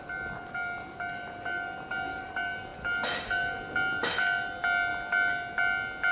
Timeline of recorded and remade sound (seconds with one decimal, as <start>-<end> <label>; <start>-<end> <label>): 0.0-6.1 recorded